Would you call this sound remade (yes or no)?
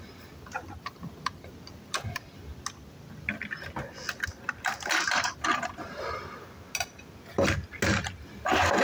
no